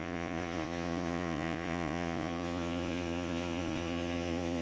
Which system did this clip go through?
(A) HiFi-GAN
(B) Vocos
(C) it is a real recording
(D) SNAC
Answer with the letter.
B